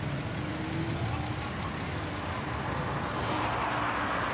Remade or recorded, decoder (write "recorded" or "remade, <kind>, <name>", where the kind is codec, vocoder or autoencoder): recorded